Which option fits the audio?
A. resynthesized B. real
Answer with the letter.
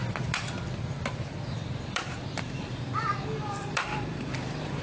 A